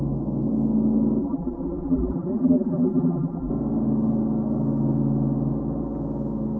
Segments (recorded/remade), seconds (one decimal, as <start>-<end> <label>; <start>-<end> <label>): 0.0-1.2 recorded; 1.2-3.5 remade; 3.5-6.6 recorded